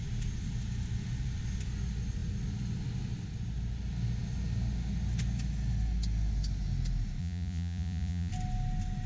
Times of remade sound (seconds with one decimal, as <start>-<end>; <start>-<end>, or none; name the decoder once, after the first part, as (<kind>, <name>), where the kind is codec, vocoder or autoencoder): 7.2-8.3 (vocoder, Vocos)